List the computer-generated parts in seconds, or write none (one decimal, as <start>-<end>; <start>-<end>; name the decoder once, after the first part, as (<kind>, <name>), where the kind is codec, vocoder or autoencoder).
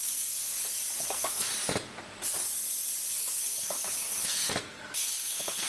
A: 0.0-0.4 (codec, SNAC); 1.0-1.5; 3.1-5.7